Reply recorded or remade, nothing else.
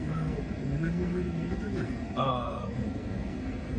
remade